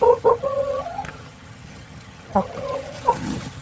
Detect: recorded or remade remade